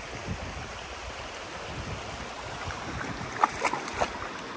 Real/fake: real